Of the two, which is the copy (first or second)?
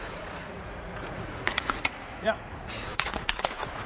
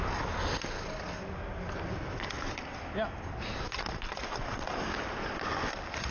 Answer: first